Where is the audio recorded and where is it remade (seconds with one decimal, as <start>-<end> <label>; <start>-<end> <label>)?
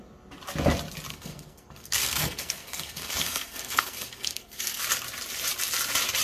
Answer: 0.0-1.1 recorded; 1.1-4.8 remade; 4.8-6.2 recorded